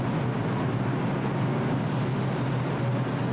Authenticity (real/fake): real